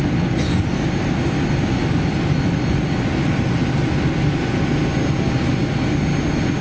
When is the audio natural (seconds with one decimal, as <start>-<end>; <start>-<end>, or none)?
0.0-6.6